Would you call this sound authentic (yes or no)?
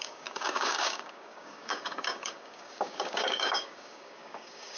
no